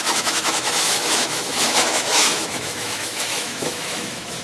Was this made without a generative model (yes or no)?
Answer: no